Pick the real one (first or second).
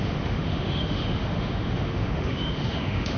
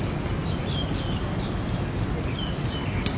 second